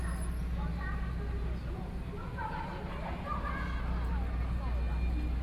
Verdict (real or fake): real